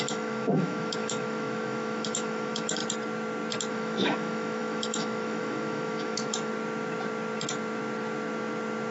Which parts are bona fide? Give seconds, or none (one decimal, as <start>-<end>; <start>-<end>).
2.8-3.7; 6.5-8.9